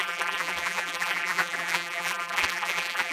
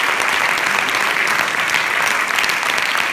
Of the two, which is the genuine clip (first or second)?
second